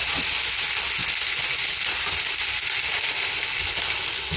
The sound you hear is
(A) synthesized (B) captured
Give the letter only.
B